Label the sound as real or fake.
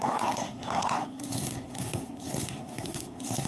fake